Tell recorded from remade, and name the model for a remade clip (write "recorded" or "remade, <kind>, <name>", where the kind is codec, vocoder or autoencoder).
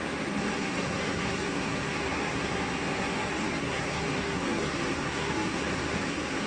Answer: remade, codec, SNAC